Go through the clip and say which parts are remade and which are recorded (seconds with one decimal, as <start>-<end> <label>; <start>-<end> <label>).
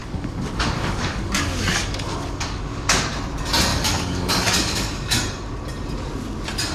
0.0-3.0 remade; 3.0-3.7 recorded; 3.7-5.2 remade; 5.2-6.7 recorded